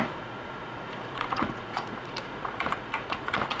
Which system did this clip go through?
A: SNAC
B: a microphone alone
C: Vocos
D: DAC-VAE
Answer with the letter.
C